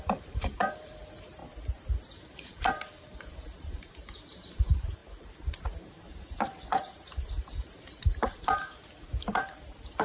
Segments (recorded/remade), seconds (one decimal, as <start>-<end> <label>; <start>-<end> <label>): 0.0-1.4 remade; 1.4-2.1 recorded; 2.1-10.0 remade